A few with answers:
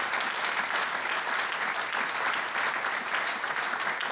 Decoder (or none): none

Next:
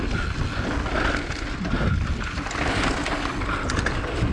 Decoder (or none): none